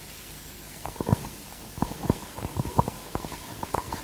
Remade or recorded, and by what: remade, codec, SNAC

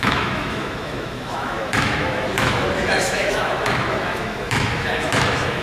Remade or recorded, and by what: remade, autoencoder, DAC-VAE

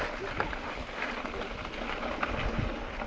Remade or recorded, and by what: recorded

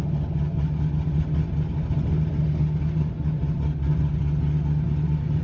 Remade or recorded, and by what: recorded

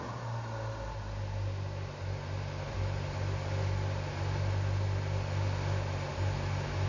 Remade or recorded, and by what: recorded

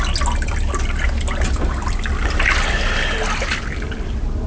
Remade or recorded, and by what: recorded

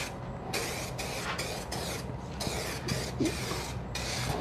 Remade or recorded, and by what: recorded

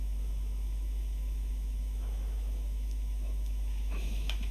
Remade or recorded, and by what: remade, autoencoder, DAC-VAE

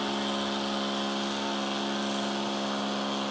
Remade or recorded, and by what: recorded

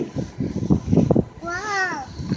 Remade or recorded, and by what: recorded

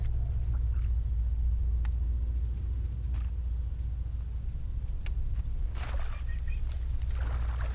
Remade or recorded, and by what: recorded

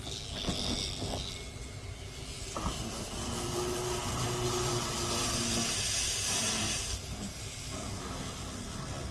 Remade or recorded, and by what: recorded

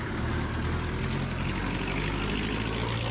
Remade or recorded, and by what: recorded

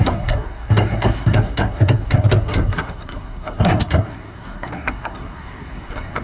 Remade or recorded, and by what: remade, codec, SNAC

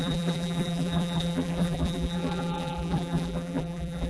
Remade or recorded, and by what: remade, vocoder, BigVGAN v2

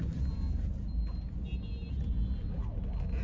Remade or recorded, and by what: recorded